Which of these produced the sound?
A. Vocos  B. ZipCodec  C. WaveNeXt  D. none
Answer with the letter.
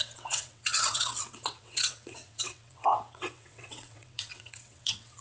C